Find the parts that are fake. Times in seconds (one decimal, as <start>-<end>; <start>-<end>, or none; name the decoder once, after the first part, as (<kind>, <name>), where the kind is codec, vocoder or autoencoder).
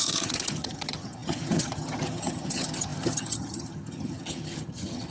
0.0-5.1 (vocoder, HiFi-GAN)